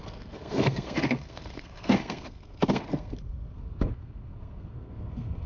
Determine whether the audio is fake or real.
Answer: fake